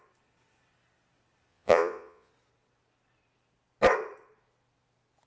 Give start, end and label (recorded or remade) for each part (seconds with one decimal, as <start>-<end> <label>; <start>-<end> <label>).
0.0-1.5 recorded; 1.5-2.3 remade; 2.3-5.3 recorded